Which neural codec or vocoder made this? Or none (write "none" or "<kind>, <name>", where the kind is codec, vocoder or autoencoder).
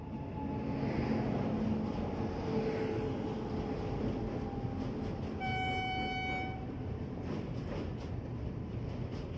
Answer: none